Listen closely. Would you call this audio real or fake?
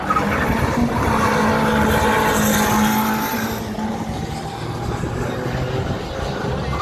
real